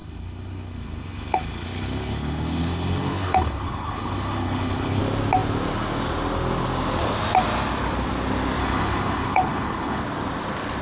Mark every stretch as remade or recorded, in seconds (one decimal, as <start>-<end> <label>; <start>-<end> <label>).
0.0-5.0 remade; 5.0-8.6 recorded; 8.6-10.0 remade; 10.0-10.8 recorded

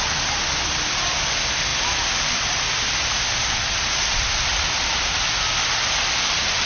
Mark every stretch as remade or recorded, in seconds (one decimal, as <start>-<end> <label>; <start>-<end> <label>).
0.0-6.7 recorded

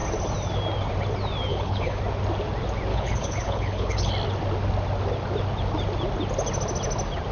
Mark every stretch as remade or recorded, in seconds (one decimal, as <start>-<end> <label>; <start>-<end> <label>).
0.0-1.5 recorded; 1.5-2.0 remade; 2.0-2.9 recorded; 2.9-4.1 remade; 4.1-7.3 recorded

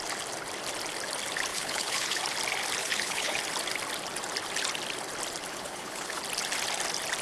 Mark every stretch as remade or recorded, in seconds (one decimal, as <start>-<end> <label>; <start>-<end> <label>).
0.0-1.5 recorded; 1.5-2.2 remade; 2.2-2.8 recorded; 2.8-3.4 remade; 3.4-5.5 recorded; 5.5-6.2 remade; 6.2-7.2 recorded

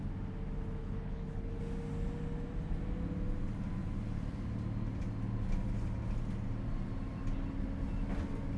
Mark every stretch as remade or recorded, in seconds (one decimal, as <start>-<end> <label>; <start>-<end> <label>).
0.0-0.8 recorded; 0.8-1.6 remade; 1.6-8.6 recorded

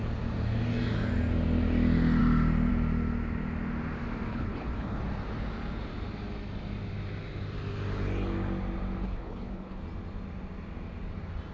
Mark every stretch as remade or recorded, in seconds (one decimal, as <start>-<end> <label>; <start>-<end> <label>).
0.0-4.3 recorded; 4.3-5.0 remade; 5.0-9.0 recorded; 9.0-9.8 remade; 9.8-11.5 recorded